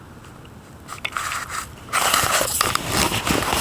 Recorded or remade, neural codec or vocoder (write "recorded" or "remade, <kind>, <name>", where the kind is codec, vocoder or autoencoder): recorded